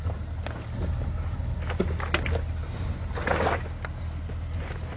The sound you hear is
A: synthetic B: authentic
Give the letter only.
B